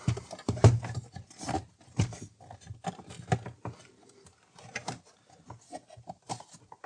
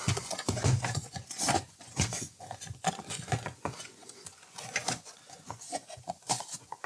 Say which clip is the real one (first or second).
first